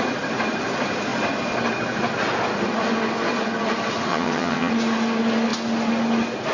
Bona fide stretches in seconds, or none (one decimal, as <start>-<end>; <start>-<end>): 0.0-4.1; 4.7-6.5